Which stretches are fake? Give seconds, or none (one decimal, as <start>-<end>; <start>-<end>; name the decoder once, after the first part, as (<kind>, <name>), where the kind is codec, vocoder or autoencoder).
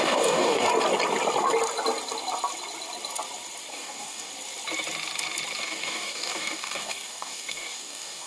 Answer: 0.0-0.7 (codec, DAC); 3.7-4.3; 5.6-8.3